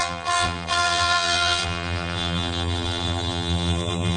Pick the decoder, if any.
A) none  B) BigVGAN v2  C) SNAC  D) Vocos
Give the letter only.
B